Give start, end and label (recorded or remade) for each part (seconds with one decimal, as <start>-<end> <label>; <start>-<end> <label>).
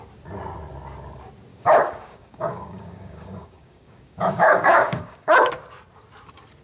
0.0-1.5 recorded; 1.5-5.5 remade; 5.5-6.6 recorded